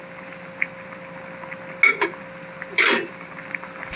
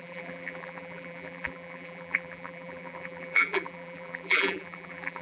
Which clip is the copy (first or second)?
second